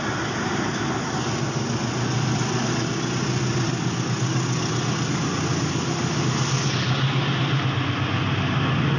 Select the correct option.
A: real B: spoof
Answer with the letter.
A